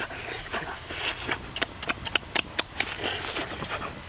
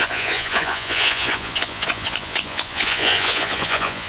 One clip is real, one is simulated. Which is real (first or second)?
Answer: first